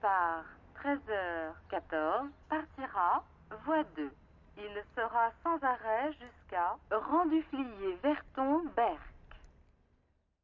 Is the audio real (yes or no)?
yes